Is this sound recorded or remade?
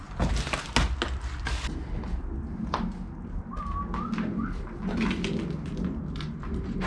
recorded